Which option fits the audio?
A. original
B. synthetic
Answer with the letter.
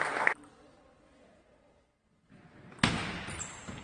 A